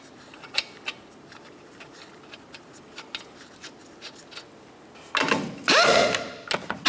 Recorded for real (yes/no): yes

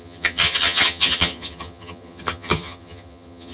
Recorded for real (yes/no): no